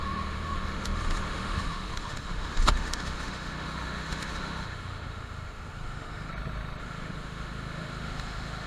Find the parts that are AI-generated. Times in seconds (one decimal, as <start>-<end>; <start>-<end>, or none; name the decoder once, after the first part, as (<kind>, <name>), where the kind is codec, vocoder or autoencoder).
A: 0.0-6.3 (autoencoder, DAC-VAE); 6.8-8.7